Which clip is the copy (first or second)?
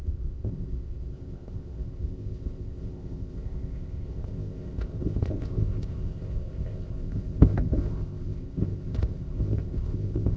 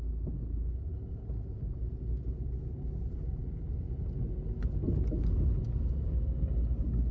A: first